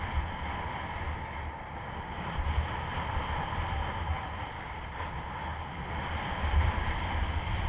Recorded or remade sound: recorded